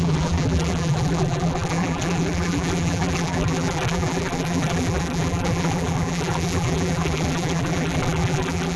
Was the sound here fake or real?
fake